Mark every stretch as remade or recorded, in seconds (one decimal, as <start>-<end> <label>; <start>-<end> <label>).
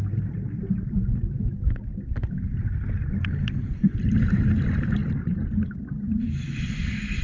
0.0-7.2 recorded